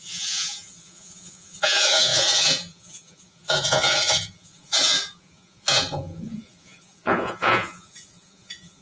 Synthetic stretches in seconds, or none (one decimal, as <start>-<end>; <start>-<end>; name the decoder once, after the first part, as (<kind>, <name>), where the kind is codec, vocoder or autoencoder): 0.0-8.8 (vocoder, Vocos)